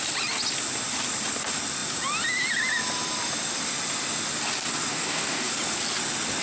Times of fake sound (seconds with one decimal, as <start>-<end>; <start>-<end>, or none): 4.9-5.5